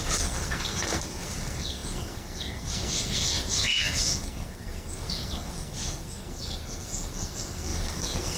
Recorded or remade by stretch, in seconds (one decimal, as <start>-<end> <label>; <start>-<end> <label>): 0.0-8.4 remade